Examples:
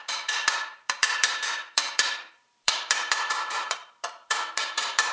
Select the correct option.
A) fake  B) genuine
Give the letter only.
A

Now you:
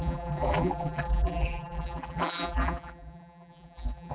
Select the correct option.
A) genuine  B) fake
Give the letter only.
B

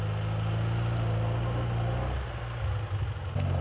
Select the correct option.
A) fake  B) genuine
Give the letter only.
B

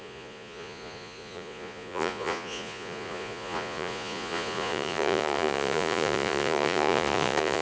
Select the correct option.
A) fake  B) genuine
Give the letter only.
A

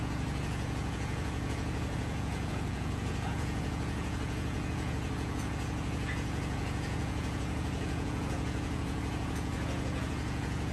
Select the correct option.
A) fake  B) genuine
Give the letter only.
A